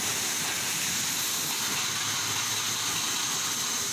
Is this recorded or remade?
recorded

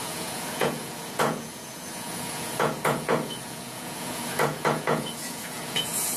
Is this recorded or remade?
remade